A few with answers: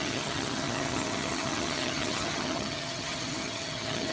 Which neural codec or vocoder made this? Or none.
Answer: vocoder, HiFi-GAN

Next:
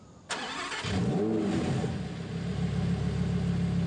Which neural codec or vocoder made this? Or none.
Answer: none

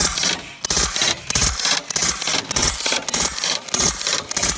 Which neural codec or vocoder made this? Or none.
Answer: none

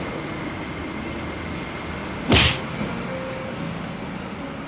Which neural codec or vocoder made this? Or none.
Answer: none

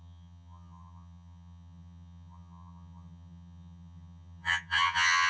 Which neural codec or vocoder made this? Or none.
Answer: vocoder, HiFi-GAN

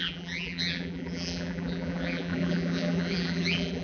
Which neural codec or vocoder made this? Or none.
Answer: vocoder, BigVGAN v2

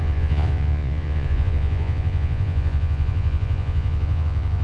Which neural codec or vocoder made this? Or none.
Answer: vocoder, Vocos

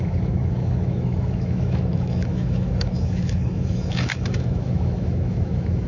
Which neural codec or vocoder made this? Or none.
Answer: autoencoder, DAC-VAE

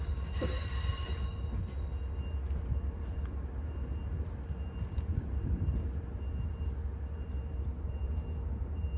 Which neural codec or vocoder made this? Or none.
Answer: none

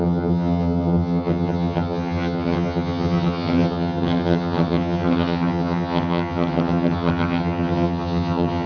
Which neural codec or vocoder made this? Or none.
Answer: vocoder, HiFi-GAN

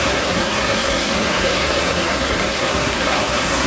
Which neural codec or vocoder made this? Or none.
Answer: codec, SNAC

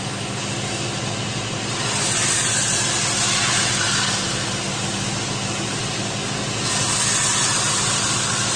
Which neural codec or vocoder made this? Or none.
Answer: none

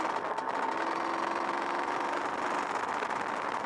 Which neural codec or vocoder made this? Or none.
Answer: none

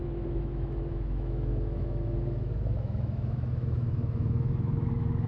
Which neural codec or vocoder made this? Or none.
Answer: autoencoder, DAC-VAE